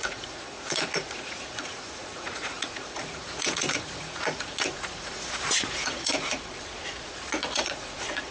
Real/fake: fake